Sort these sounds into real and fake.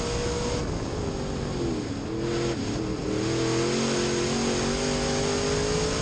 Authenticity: real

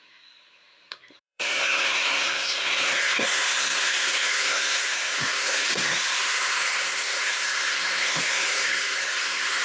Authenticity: fake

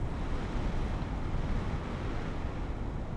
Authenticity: real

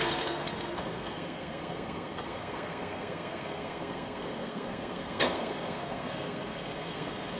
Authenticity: fake